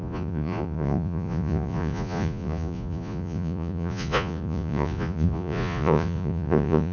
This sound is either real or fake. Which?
fake